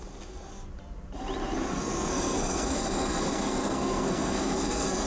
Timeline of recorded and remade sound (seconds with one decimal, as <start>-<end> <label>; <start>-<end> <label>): 0.0-1.7 recorded; 1.7-5.1 remade